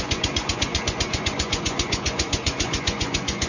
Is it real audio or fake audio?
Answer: fake